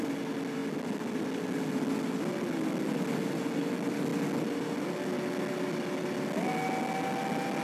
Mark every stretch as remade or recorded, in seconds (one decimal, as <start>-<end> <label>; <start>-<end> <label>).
0.0-7.6 recorded